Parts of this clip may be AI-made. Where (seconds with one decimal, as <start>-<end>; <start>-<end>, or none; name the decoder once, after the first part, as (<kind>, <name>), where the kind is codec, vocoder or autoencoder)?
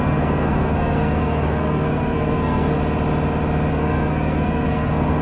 0.0-2.8 (codec, SNAC); 3.7-5.2